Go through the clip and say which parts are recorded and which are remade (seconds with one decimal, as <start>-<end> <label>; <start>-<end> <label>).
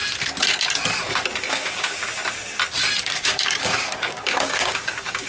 0.0-1.5 recorded; 1.5-2.0 remade; 2.0-3.0 recorded; 3.0-5.3 remade